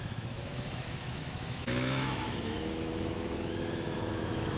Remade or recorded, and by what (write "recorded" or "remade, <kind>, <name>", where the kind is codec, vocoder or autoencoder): remade, autoencoder, DAC-VAE